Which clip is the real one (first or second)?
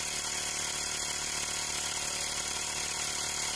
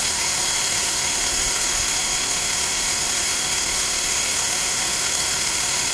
first